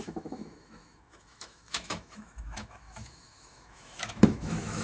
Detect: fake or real fake